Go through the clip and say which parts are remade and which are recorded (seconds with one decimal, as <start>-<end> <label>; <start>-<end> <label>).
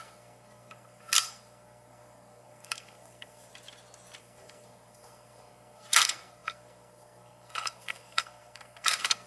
0.0-3.5 remade; 3.5-4.2 recorded; 4.2-9.3 remade